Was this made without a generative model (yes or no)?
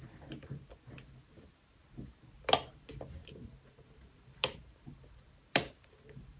no